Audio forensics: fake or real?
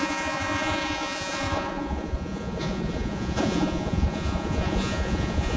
fake